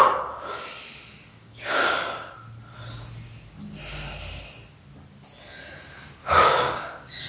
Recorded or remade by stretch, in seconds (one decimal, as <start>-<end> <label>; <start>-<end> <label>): 0.0-1.3 recorded; 1.3-2.3 remade; 2.3-6.2 recorded; 6.2-7.3 remade